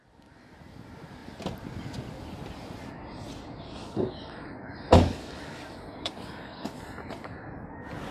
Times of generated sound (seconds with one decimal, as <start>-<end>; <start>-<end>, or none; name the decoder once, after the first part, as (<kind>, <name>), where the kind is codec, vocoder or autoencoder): 3.8-6.7 (codec, DAC)